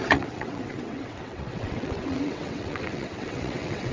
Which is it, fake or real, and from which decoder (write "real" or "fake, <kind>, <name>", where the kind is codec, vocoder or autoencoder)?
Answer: fake, vocoder, WaveNeXt